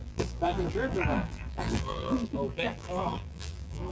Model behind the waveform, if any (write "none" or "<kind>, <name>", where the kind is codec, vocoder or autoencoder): vocoder, BigVGAN v2